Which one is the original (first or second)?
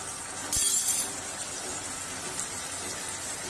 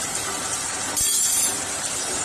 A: first